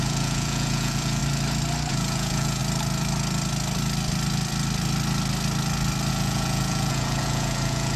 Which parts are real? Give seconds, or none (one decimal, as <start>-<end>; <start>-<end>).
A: 1.2-1.9; 2.6-6.1